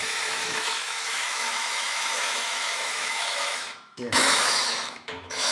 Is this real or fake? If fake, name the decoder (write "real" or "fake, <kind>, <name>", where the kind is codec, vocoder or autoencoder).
fake, autoencoder, DAC-VAE